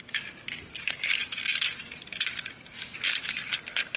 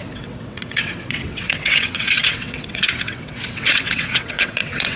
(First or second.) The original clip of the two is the first